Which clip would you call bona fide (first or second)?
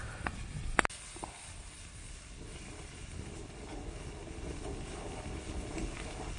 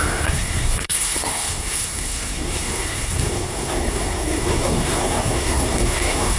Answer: first